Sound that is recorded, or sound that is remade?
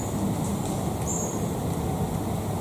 recorded